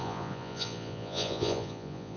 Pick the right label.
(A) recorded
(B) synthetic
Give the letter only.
B